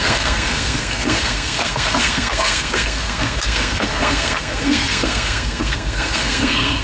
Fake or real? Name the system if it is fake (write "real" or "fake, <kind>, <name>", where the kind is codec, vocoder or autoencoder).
fake, codec, SNAC